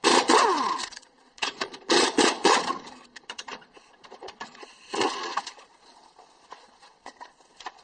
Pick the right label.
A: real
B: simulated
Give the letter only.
B